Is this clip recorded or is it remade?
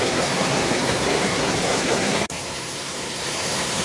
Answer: remade